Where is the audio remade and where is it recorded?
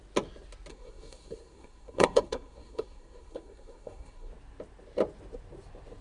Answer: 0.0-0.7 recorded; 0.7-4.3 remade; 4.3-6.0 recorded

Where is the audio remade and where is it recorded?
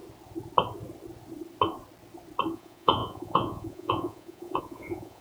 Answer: 0.0-2.5 recorded; 2.5-5.2 remade